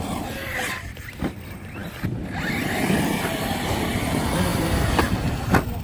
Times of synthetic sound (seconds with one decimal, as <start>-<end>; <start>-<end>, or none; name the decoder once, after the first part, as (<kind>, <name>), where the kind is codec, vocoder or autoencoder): none